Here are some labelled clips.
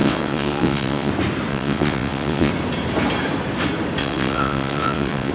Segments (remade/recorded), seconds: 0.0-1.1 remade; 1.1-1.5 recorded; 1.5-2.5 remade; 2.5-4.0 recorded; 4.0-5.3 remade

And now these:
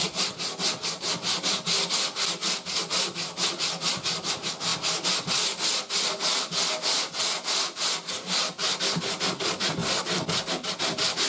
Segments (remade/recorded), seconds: 0.0-11.3 recorded

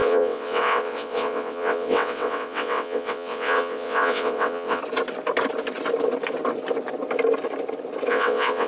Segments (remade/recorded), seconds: 0.0-4.8 remade; 4.8-8.1 recorded; 8.1-8.7 remade